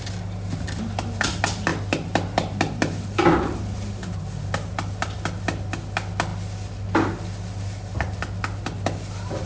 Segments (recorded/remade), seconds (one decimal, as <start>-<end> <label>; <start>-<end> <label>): 0.0-1.7 recorded; 1.7-4.2 remade; 4.2-9.5 recorded